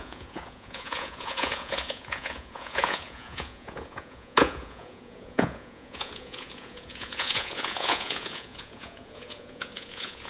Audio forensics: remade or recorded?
remade